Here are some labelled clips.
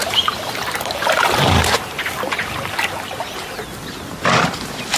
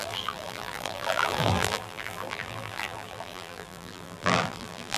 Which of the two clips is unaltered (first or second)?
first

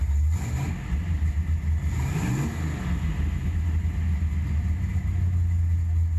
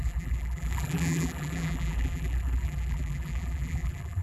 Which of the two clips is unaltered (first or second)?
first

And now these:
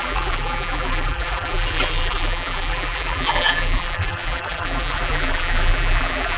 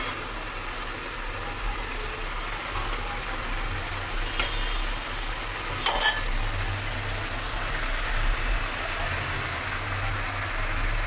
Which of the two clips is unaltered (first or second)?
second